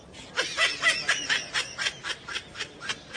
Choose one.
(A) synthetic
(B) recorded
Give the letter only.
B